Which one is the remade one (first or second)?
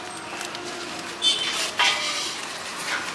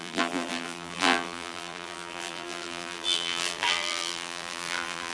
second